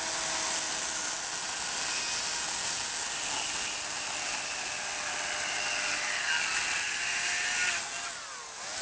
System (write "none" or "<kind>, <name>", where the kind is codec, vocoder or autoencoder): none